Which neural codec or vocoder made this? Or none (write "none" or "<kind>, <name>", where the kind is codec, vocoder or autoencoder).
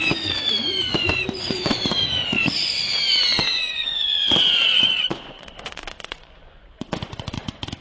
vocoder, Vocos